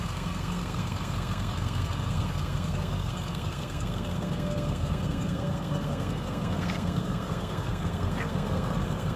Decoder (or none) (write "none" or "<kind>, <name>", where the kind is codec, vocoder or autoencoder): codec, SNAC